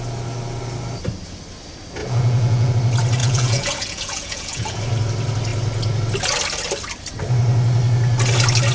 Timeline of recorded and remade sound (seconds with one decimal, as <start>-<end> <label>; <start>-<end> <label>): 0.0-2.0 recorded; 2.0-2.7 remade; 2.7-3.2 recorded; 3.2-4.8 remade; 4.8-8.7 recorded